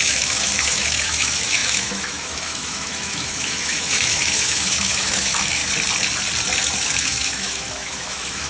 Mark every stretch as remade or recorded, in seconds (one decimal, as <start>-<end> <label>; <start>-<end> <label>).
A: 0.0-5.6 remade; 5.6-7.0 recorded; 7.0-8.5 remade